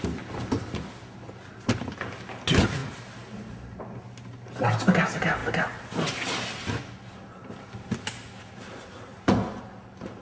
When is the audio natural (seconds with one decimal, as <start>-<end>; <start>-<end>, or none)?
0.0-10.2